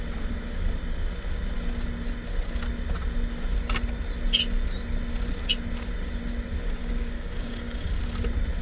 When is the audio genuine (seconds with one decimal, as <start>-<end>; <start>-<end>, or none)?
0.0-6.8; 8.0-8.6